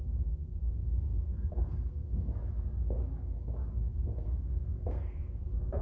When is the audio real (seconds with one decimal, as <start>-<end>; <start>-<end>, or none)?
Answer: 2.4-3.9